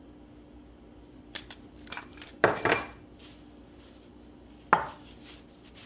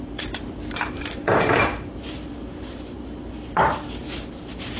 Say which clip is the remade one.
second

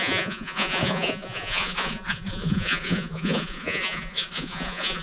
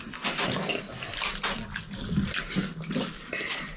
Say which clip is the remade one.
first